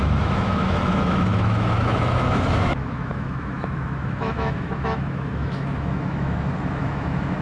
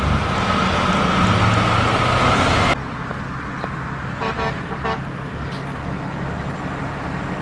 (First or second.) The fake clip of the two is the first